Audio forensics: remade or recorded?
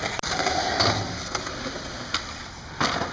recorded